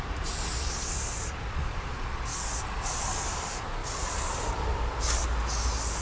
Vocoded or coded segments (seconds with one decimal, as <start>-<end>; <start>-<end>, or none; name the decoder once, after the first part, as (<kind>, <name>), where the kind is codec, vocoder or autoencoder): none